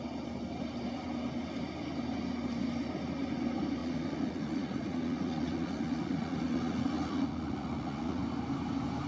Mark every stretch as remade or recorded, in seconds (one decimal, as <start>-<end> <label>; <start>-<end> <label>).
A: 0.0-3.8 recorded; 3.8-8.2 remade; 8.2-9.1 recorded